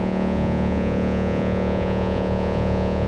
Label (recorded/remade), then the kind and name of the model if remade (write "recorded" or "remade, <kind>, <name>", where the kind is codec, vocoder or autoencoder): remade, vocoder, Vocos